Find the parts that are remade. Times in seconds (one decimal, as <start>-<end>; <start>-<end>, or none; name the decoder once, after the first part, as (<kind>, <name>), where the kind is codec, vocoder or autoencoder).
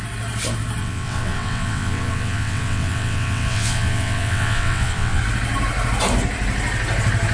0.8-5.2 (vocoder, WaveNeXt)